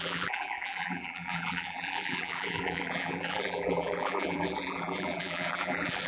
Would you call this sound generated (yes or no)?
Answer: yes